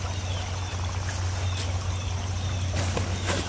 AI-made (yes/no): no